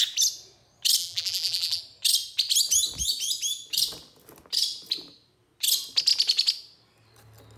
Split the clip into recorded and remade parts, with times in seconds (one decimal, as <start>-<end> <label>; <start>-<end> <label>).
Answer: 0.0-1.0 recorded; 1.0-1.8 remade; 1.8-7.6 recorded